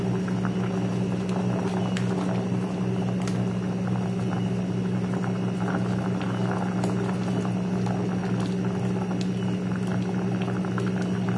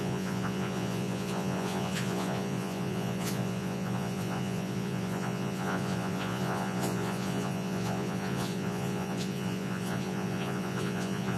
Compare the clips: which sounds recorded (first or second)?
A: first